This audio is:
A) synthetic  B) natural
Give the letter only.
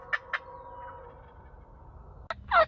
B